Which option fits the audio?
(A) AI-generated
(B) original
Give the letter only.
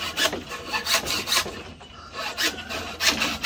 B